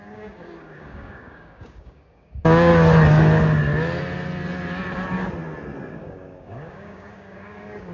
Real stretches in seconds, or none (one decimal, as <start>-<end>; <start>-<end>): 2.7-5.9